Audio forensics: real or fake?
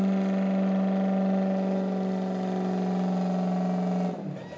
real